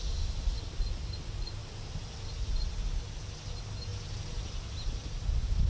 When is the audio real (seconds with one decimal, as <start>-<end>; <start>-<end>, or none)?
0.0-5.7